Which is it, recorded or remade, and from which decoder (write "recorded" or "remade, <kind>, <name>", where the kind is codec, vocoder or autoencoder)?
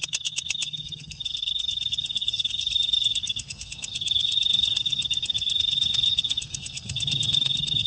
remade, codec, SNAC